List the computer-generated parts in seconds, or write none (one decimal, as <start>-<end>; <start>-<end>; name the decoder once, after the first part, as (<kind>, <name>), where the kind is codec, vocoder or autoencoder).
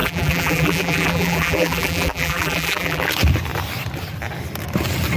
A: 0.0-3.1 (vocoder, BigVGAN v2)